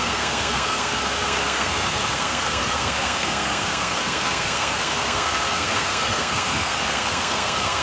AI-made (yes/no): yes